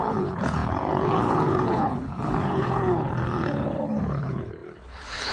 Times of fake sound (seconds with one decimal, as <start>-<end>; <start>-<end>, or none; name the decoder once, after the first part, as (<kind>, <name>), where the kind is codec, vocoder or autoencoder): 0.0-5.3 (codec, HILCodec)